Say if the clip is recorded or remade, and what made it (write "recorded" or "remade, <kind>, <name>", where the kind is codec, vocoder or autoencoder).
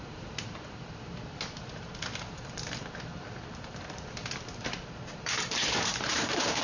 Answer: remade, vocoder, BigVGAN v2